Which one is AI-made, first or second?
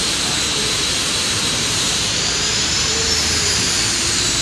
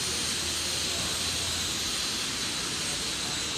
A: first